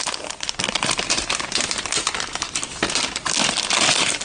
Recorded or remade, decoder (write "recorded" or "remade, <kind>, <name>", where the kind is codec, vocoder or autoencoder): recorded